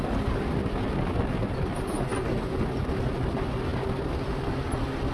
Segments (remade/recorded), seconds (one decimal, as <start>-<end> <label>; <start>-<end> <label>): 0.0-5.1 recorded